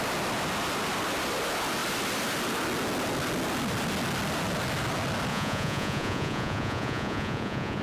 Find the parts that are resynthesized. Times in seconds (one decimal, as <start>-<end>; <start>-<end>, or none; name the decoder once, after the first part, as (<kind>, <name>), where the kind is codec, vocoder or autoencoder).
5.3-7.8 (vocoder, Vocos)